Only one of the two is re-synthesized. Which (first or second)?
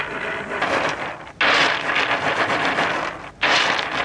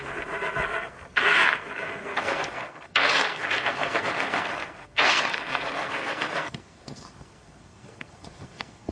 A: second